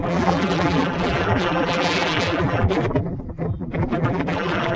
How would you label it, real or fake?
fake